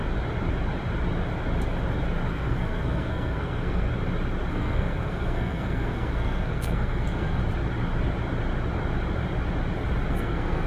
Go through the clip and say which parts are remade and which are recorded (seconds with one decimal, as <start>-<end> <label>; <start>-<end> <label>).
0.0-2.3 recorded; 2.3-3.9 remade; 3.9-4.5 recorded; 4.5-7.4 remade; 7.4-10.1 recorded; 10.1-10.7 remade